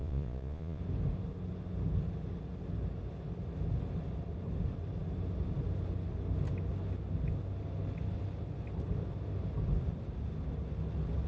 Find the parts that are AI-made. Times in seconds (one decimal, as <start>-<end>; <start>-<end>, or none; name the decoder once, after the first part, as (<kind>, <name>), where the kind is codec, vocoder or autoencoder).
0.0-0.8 (vocoder, Vocos)